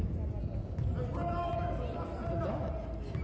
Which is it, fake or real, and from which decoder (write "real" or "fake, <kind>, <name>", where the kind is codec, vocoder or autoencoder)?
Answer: real